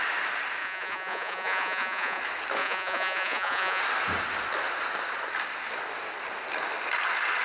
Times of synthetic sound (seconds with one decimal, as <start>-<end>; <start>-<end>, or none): 0.6-2.2; 2.6-3.8